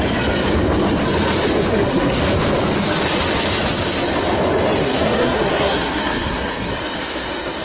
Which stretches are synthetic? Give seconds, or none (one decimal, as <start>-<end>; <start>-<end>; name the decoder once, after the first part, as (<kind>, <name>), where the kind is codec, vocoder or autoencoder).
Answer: 1.7-2.2 (codec, SNAC); 4.8-6.7